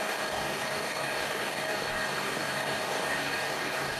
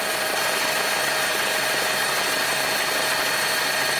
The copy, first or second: first